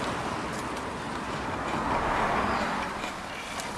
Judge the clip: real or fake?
fake